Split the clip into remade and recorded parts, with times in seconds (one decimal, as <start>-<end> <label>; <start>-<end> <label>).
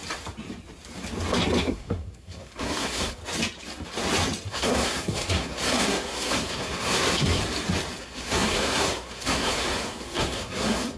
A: 0.0-1.6 recorded; 1.6-3.2 remade; 3.2-4.5 recorded; 4.5-7.4 remade; 7.4-8.0 recorded; 8.0-11.0 remade